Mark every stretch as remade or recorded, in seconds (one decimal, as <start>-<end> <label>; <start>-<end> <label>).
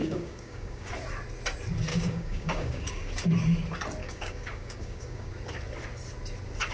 0.0-0.9 remade; 0.9-1.9 recorded; 1.9-3.1 remade; 3.1-4.0 recorded; 4.0-5.3 remade; 5.3-6.7 recorded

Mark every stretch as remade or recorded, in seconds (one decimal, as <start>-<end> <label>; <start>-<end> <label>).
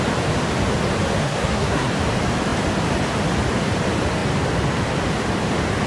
0.0-1.2 recorded; 1.2-1.9 remade; 1.9-5.9 recorded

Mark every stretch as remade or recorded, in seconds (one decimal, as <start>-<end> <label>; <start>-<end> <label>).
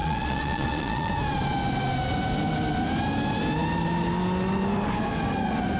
0.0-1.1 remade; 1.1-5.8 recorded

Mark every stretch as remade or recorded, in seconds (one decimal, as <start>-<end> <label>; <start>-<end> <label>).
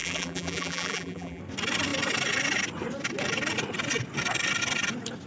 0.0-1.4 remade; 1.4-5.3 recorded